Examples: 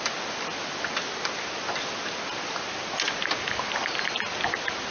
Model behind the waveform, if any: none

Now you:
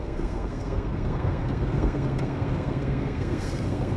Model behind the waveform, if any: codec, SNAC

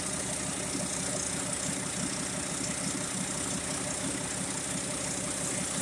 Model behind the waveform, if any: none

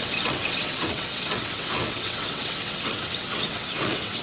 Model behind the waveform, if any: vocoder, WaveNeXt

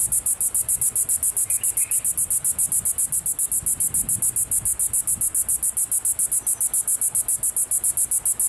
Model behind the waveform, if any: none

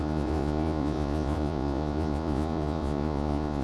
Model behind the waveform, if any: vocoder, Vocos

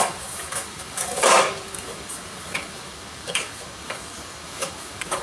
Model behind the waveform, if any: codec, DAC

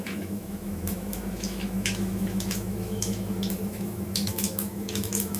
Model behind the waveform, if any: autoencoder, DAC-VAE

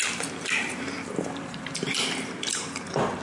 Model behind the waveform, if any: vocoder, BigVGAN v2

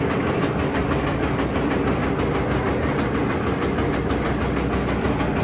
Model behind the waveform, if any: none